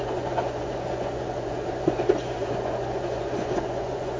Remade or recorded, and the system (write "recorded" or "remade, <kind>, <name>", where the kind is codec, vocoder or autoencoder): remade, vocoder, Vocos